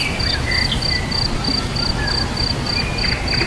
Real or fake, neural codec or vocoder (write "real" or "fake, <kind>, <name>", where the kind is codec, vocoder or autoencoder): real